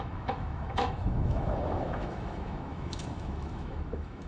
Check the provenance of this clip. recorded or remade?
remade